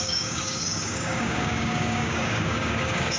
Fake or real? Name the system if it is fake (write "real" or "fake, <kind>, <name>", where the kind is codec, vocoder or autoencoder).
fake, codec, DAC